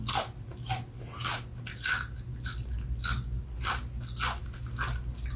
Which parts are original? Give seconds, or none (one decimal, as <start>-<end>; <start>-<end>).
0.0-5.4